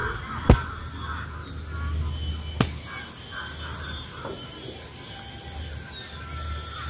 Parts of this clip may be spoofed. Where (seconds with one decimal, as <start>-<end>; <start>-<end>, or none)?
none